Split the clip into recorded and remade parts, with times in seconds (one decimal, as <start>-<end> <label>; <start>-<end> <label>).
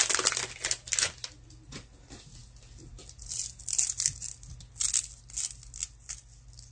0.0-6.7 recorded